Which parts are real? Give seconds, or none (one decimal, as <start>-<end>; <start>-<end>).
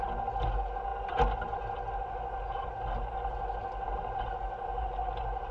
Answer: 0.0-5.5